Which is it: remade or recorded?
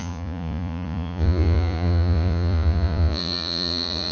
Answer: remade